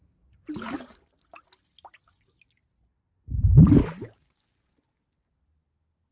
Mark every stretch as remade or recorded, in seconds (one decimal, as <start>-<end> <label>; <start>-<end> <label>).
0.0-3.8 recorded; 3.8-4.4 remade; 4.4-6.1 recorded